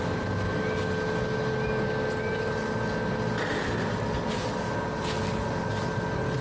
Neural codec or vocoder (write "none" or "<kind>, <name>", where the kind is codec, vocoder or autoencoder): none